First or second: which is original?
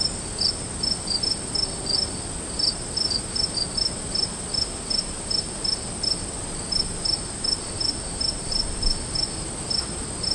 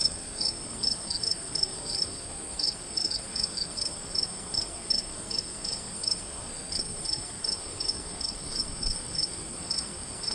first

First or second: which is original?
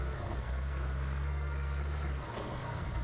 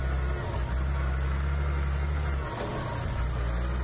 second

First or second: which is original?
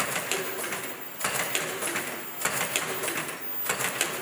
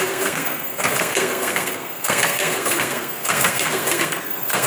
first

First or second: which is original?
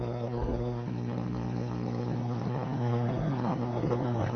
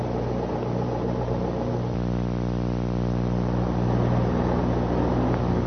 second